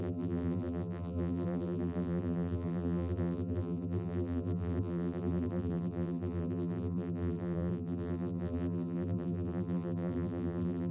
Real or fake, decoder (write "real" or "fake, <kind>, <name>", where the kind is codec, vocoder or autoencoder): fake, vocoder, BigVGAN v2